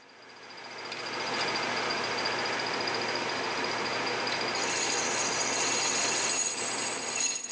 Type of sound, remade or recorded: recorded